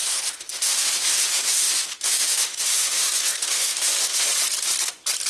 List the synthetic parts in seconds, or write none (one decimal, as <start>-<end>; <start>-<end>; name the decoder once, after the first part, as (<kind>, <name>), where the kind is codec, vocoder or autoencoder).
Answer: 0.0-4.3 (autoencoder, DAC-VAE)